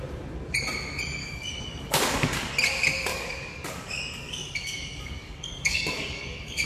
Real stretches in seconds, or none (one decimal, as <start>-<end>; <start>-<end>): 0.0-1.2; 2.5-3.1